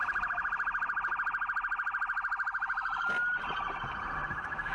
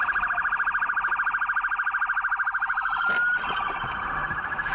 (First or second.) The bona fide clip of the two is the first